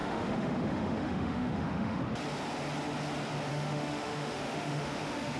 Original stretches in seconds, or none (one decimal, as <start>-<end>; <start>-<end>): 2.0-3.5